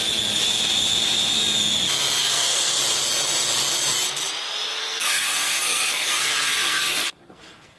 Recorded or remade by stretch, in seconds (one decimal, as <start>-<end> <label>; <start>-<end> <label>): 0.0-2.2 recorded; 2.2-2.8 remade; 2.8-4.8 recorded; 4.8-7.8 remade